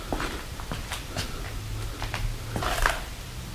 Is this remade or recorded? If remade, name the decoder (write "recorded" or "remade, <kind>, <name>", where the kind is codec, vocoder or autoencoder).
remade, vocoder, BigVGAN v2